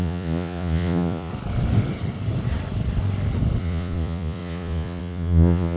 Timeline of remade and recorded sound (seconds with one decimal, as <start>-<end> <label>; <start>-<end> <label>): 0.0-1.3 remade; 1.3-3.6 recorded; 3.6-5.8 remade